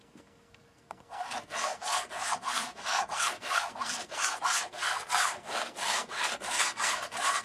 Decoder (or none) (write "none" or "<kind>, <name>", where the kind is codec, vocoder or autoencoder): codec, SNAC